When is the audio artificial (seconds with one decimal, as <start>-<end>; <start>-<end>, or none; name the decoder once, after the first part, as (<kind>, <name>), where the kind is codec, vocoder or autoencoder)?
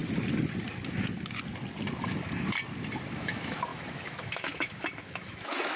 3.1-5.8 (autoencoder, DAC-VAE)